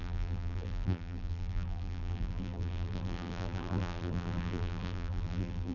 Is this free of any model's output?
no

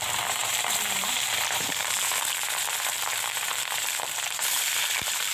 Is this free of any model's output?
no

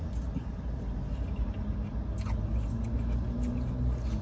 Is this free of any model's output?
yes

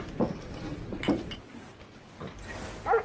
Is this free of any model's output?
yes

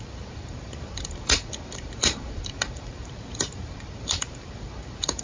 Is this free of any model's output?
no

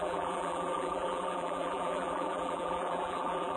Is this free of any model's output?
no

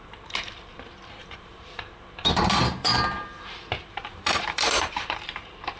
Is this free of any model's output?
no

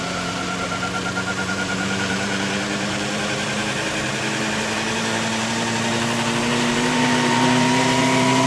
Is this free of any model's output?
no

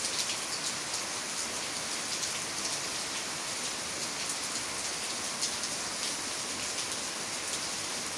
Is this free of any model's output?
yes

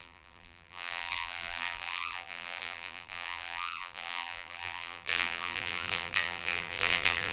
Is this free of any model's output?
no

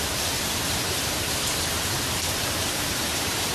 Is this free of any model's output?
no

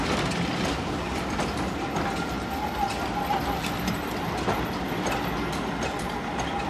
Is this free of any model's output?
yes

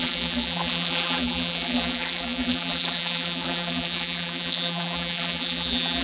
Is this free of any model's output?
no